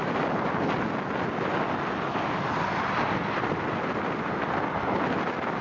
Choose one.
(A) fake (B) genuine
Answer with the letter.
B